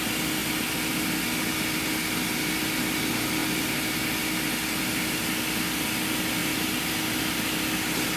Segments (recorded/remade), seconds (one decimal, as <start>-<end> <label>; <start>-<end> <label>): 0.0-8.2 recorded